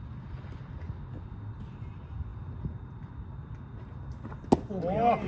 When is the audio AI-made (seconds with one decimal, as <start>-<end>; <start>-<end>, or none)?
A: none